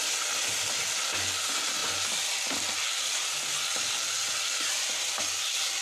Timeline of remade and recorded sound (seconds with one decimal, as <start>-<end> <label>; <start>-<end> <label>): 0.0-5.8 recorded